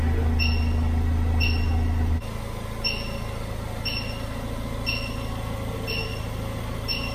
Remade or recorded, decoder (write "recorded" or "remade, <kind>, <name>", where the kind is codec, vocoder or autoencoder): recorded